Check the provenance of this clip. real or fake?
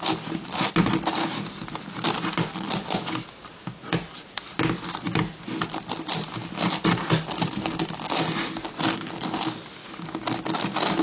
real